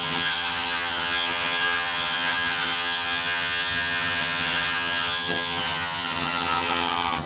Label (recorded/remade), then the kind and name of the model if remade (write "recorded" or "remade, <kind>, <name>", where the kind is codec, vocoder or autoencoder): remade, vocoder, HiFi-GAN